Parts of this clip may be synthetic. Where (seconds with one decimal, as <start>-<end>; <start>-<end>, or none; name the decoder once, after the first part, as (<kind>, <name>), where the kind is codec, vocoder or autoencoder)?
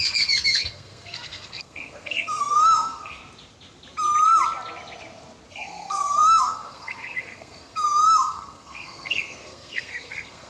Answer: 0.0-3.2 (codec, SNAC); 5.5-10.5